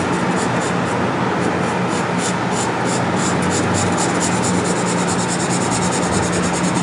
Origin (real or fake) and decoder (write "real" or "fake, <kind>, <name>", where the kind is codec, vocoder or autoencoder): real